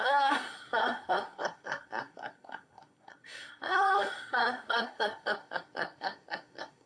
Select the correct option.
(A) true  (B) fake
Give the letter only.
B